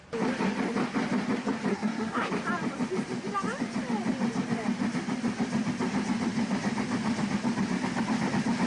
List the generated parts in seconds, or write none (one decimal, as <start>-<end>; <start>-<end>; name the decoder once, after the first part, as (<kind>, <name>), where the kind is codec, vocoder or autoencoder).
1.7-2.3 (codec, SNAC)